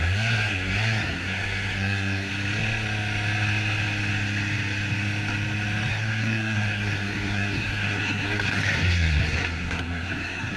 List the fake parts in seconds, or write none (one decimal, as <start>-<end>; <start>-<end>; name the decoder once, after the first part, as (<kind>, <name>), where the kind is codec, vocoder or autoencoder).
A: 0.0-2.3 (codec, SNAC); 5.9-10.6